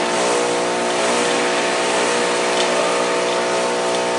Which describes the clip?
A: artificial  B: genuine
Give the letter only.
B